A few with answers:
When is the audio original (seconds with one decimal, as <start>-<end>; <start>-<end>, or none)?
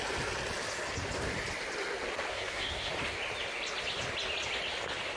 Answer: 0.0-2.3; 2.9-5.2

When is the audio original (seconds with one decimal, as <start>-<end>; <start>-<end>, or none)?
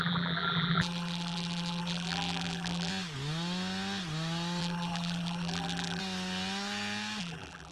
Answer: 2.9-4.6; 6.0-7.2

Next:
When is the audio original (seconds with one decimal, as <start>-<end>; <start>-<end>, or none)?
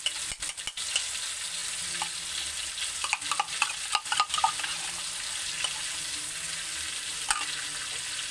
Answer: 0.0-8.3